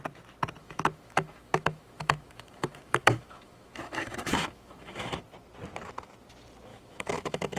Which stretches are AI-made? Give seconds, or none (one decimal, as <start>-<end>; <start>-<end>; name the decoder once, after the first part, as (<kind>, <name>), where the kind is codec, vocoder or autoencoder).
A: 0.6-5.2 (autoencoder, DAC-VAE); 6.7-7.6